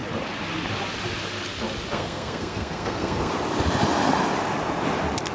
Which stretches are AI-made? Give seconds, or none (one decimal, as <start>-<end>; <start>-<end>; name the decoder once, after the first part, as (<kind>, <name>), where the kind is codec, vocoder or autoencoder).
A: 1.9-3.3 (codec, SNAC)